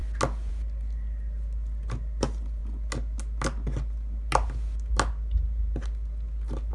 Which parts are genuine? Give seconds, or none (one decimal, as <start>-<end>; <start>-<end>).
0.0-6.7